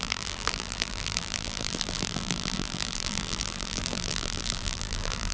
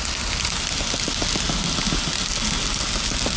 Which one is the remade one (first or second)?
first